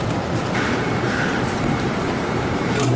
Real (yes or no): no